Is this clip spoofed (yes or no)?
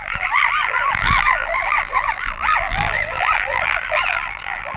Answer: yes